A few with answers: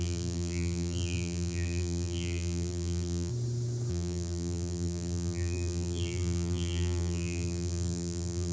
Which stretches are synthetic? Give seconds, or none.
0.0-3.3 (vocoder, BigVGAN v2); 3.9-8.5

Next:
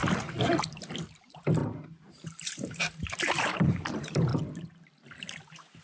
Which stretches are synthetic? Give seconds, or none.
1.2-1.6 (vocoder, BigVGAN v2); 2.1-4.3

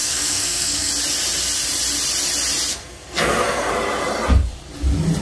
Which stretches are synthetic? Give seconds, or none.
0.0-0.9 (codec, SNAC); 2.7-3.7

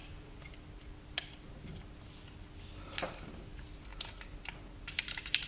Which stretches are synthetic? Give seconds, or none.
none